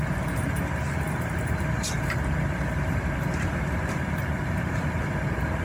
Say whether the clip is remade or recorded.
remade